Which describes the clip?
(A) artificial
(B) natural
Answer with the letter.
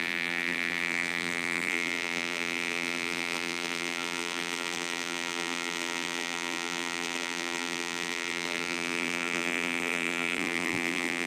A